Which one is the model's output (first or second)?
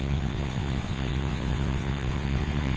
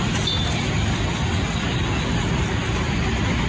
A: first